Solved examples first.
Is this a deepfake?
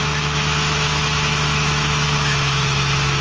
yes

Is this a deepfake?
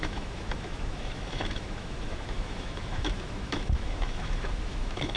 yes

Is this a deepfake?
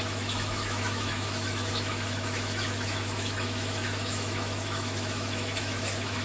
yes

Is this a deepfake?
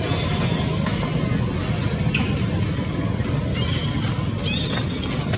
no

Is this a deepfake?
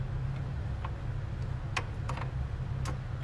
no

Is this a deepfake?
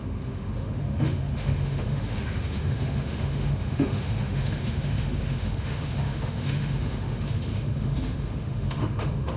yes